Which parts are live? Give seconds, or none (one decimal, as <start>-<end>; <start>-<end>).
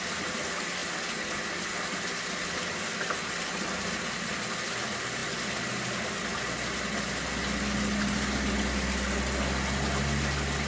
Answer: 0.0-10.7